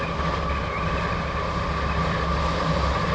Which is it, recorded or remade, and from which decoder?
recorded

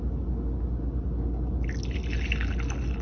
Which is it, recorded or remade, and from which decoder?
recorded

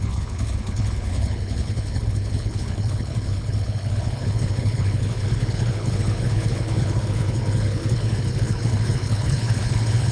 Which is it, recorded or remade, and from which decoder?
remade, codec, HILCodec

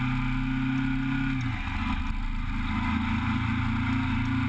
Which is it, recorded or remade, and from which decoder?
recorded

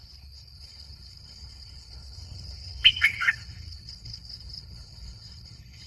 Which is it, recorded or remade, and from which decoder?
remade, codec, HILCodec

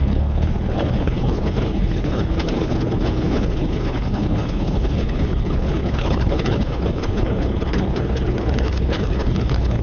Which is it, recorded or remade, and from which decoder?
remade, codec, HILCodec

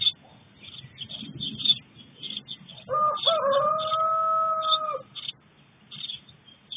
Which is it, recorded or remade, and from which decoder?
recorded